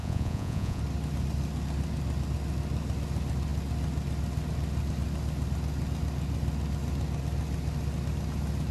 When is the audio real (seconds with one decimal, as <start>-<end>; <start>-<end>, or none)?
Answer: 0.8-8.7